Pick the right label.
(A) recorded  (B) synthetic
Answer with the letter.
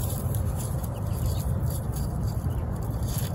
B